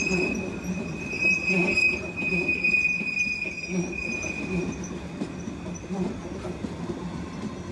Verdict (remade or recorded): recorded